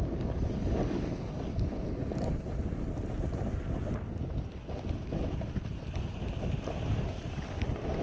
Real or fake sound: real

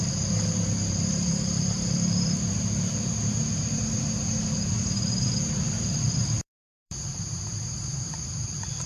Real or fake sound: fake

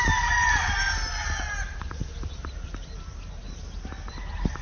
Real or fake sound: real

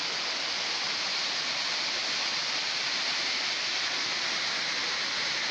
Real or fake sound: real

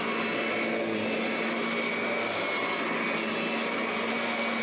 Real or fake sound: real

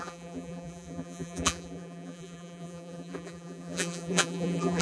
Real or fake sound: fake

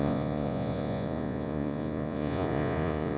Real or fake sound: fake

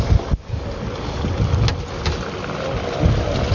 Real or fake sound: real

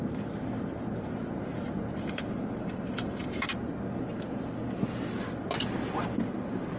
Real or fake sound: real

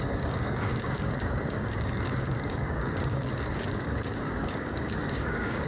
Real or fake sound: fake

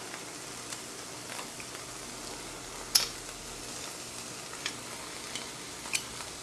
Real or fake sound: real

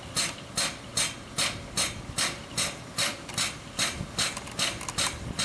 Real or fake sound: real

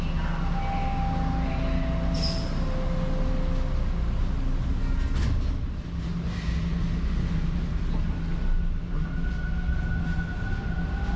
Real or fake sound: real